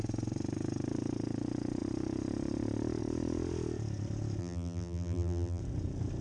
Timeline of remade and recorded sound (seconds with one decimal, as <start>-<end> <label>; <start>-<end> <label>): 0.0-4.4 recorded; 4.4-5.6 remade; 5.6-6.2 recorded